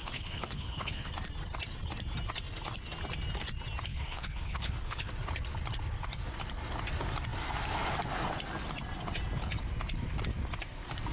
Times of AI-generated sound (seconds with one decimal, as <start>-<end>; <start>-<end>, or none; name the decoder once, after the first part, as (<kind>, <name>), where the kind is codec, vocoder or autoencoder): 0.0-1.1 (codec, HILCodec); 3.9-5.1